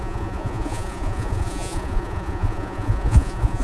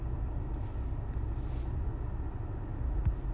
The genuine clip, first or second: second